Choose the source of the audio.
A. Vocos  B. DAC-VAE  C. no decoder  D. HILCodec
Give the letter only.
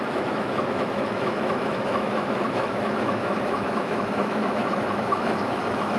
B